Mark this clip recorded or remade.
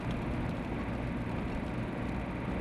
recorded